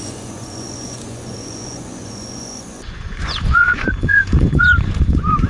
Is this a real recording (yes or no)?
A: no